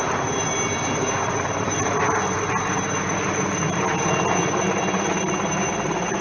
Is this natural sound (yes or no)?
yes